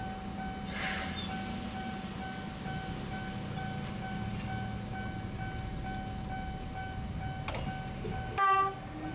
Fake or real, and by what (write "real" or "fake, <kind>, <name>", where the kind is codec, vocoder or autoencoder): real